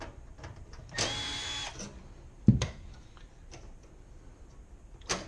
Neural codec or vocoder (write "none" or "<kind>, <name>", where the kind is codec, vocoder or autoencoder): vocoder, BigVGAN v2